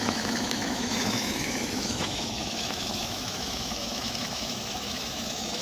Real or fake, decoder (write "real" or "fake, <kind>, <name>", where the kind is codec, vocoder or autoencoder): fake, autoencoder, DAC-VAE